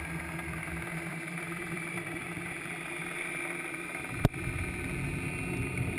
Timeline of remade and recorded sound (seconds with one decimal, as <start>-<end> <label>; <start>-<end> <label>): 0.0-1.1 recorded; 1.1-3.3 remade; 3.3-6.0 recorded